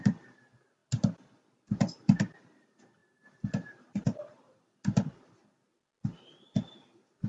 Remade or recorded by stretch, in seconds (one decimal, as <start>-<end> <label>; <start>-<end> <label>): 0.0-7.3 recorded